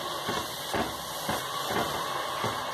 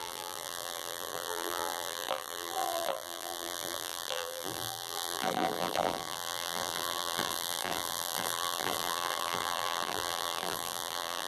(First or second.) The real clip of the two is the first